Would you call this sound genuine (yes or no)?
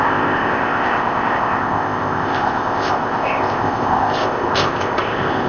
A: no